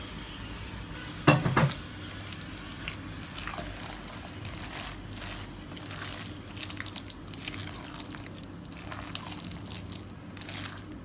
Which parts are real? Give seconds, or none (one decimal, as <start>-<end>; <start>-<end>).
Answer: 0.0-11.0